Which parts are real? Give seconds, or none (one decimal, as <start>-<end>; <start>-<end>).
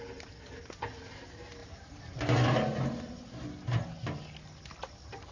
0.0-1.6; 2.2-5.3